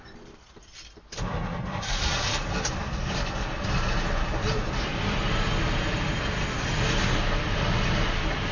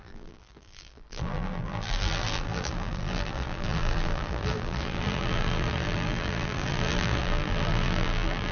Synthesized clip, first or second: second